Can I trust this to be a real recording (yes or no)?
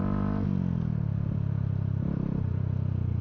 yes